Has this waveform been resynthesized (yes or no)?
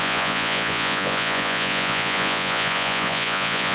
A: yes